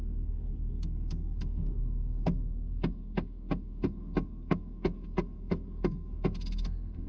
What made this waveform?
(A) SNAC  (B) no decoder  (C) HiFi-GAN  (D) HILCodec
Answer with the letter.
A